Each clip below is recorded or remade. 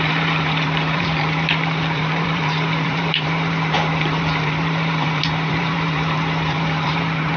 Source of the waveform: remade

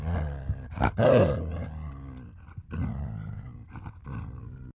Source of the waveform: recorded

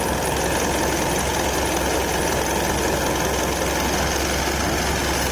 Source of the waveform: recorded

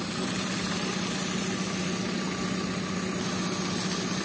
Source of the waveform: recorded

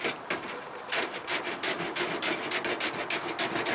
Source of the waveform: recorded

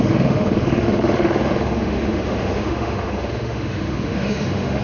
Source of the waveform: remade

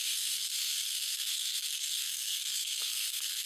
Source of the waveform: remade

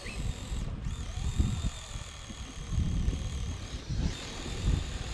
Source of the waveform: remade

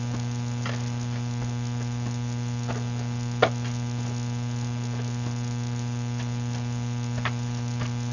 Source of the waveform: recorded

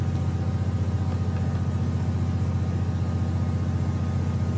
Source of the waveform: recorded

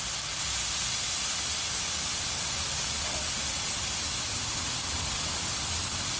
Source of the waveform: recorded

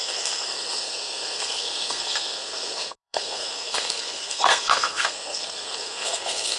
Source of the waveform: remade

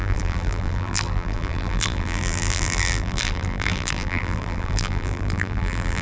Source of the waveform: remade